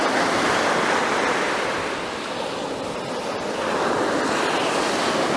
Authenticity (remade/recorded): recorded